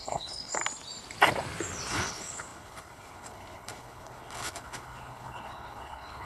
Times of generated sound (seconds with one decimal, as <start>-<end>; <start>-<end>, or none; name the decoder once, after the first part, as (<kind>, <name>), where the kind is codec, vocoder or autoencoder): 0.0-0.6 (codec, HILCodec); 1.9-6.3